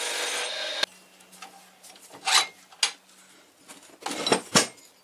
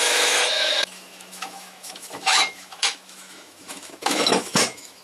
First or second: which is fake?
second